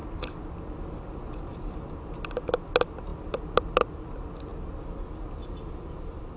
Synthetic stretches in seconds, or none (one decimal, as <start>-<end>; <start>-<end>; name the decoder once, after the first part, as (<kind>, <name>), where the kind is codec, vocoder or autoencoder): none